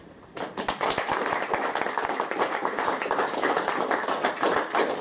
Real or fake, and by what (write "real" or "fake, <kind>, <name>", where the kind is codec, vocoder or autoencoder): fake, vocoder, BigVGAN v2